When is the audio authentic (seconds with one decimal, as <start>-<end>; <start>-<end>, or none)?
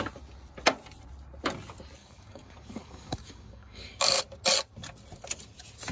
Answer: 0.0-2.0; 4.2-5.9